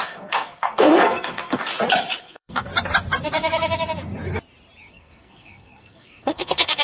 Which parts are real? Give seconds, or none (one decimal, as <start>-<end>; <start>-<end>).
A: 1.7-2.2; 2.7-4.9